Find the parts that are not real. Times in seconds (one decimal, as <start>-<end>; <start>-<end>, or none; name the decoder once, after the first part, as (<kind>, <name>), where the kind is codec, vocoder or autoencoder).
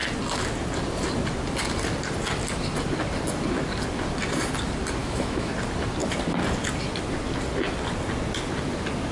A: 5.0-5.5 (autoencoder, DAC-VAE)